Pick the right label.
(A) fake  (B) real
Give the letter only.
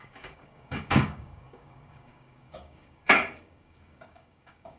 A